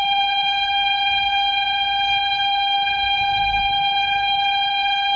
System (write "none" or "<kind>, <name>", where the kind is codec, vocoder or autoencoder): codec, HILCodec